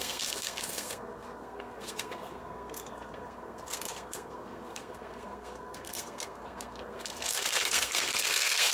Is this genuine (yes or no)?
no